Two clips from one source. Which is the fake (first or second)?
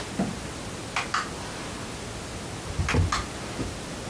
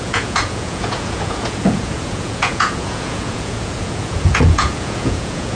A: second